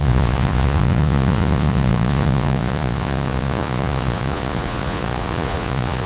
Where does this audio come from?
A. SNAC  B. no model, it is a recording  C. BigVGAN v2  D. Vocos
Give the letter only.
D